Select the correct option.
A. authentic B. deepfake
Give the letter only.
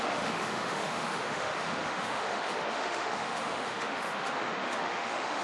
B